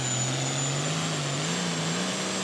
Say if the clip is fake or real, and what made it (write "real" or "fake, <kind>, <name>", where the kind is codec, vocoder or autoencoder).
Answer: real